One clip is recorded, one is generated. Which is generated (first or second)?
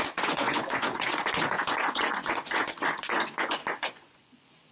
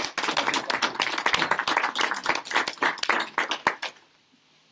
first